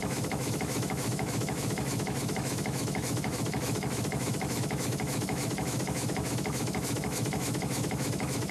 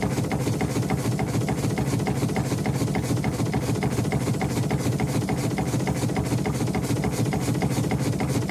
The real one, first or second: second